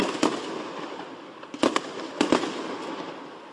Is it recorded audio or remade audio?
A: recorded